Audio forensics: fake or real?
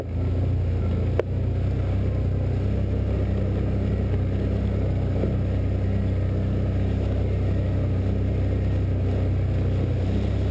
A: real